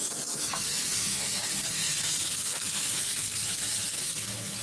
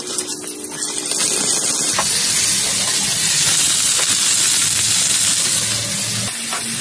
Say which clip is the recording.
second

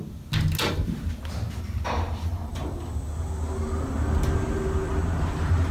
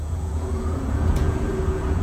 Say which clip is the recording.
first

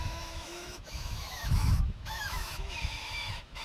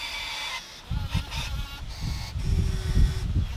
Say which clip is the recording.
second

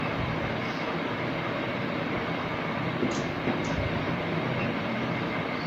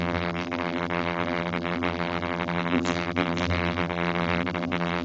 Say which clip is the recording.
first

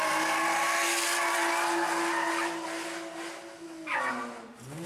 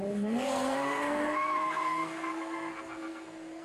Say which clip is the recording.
first